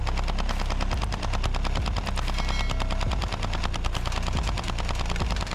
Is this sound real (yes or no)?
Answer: yes